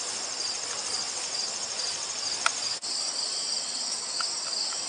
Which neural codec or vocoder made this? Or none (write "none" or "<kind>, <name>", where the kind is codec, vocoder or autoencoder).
none